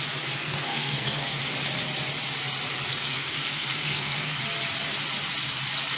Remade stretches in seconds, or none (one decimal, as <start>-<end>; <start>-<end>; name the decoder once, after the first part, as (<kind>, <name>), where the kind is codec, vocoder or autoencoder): 0.4-1.4 (codec, SNAC); 3.0-4.4